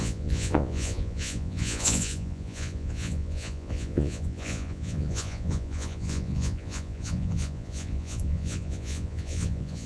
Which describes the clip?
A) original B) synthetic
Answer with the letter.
B